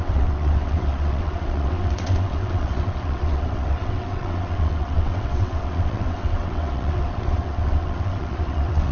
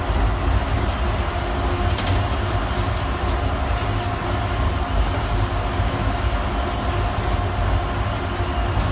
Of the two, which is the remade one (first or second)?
first